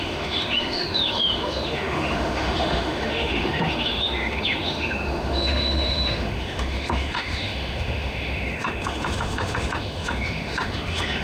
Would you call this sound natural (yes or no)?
no